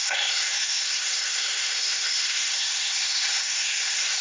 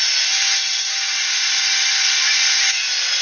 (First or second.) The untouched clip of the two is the second